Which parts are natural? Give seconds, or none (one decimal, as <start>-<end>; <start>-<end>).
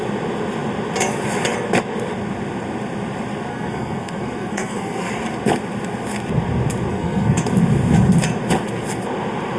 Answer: 0.0-3.5; 5.1-6.9; 7.4-9.6